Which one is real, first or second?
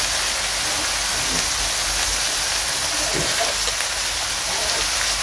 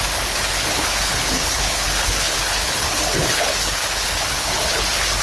first